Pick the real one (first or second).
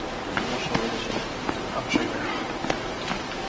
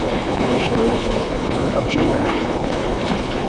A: first